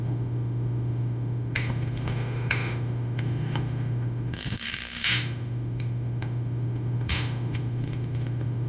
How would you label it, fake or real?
fake